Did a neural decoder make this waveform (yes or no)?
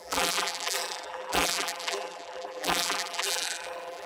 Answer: yes